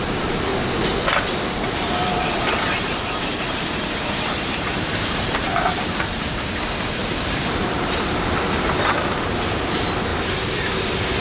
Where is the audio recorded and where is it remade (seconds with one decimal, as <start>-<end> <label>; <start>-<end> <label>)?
0.0-0.5 remade; 0.5-1.7 recorded; 1.7-10.1 remade; 10.1-11.2 recorded